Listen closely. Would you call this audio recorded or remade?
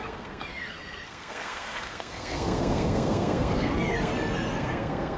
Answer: remade